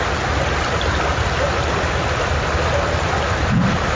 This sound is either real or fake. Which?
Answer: fake